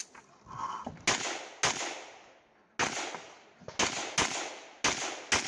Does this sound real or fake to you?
real